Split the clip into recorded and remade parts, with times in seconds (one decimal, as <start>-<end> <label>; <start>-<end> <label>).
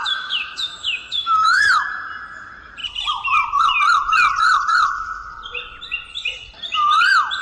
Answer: 0.0-1.6 remade; 1.6-7.4 recorded